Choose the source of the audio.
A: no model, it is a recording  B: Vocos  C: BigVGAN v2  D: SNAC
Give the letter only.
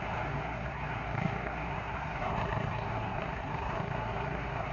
D